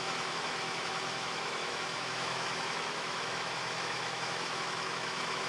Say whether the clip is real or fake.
fake